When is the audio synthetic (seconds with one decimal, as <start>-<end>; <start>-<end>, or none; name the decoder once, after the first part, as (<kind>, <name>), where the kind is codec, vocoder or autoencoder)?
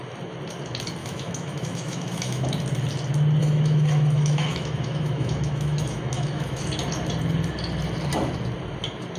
1.0-2.5 (autoencoder, DAC-VAE); 3.4-6.6